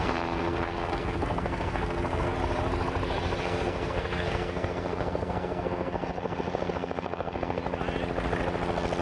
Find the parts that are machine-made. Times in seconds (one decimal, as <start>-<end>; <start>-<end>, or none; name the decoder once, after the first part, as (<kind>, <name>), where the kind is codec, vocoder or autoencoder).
0.0-2.3 (codec, SNAC); 3.4-7.6

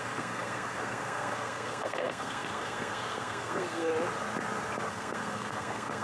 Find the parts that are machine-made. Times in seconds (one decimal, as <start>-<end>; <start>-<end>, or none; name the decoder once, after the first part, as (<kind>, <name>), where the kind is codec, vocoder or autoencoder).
0.0-3.9 (codec, SNAC); 4.9-6.0

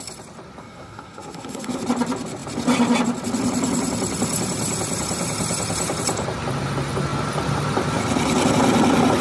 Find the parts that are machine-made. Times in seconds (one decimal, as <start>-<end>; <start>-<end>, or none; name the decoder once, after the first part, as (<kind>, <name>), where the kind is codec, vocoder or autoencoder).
0.6-1.8 (codec, SNAC)

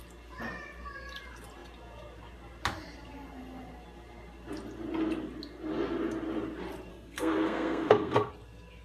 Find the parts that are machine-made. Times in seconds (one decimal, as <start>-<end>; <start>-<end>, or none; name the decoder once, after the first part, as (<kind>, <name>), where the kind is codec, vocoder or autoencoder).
6.9-8.3 (codec, SNAC)

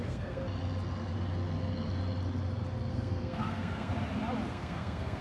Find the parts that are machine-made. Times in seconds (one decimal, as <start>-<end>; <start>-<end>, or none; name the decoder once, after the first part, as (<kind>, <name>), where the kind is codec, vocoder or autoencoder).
0.0-0.4 (codec, SNAC); 2.9-3.9; 4.5-5.2